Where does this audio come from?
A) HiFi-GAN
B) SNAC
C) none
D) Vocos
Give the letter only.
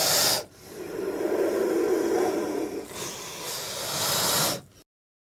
C